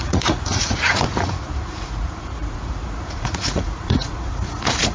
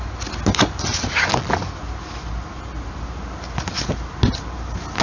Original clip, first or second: second